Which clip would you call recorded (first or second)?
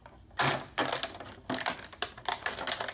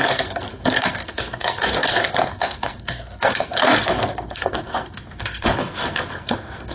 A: first